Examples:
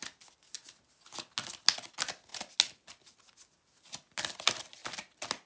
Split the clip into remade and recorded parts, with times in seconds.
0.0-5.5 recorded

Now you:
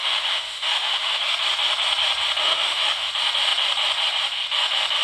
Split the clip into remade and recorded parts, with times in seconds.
0.0-1.2 remade; 1.2-2.4 recorded; 2.4-3.1 remade; 3.1-5.0 recorded

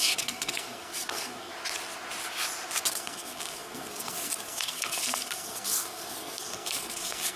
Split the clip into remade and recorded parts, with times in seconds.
0.0-1.5 remade; 1.5-2.9 recorded; 2.9-7.4 remade

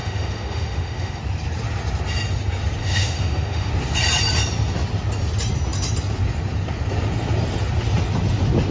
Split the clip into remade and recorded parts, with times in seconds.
0.0-1.2 remade; 1.2-2.8 recorded; 2.8-3.7 remade; 3.7-8.7 recorded

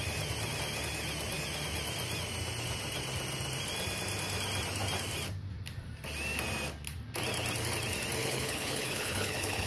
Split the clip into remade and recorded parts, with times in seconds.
0.0-8.2 recorded; 8.2-9.7 remade

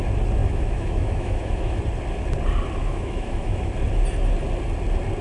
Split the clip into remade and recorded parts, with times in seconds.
0.0-0.4 recorded; 0.4-1.8 remade; 1.8-2.8 recorded; 2.8-3.7 remade; 3.7-5.2 recorded

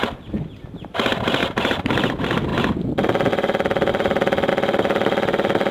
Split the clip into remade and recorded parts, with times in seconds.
0.0-1.4 recorded; 1.4-2.1 remade; 2.1-3.9 recorded; 3.9-4.5 remade; 4.5-5.7 recorded